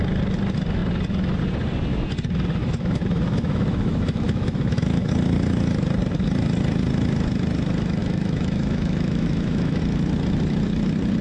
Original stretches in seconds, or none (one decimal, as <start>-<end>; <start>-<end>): 0.0-2.6; 5.1-8.0; 9.8-11.2